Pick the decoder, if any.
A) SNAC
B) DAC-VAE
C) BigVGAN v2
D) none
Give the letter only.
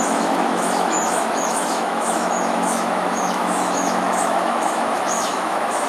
B